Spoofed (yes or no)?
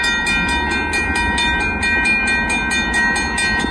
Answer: no